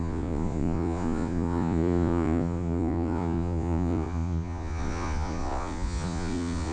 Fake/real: fake